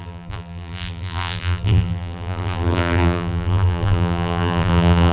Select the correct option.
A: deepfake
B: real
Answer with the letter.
A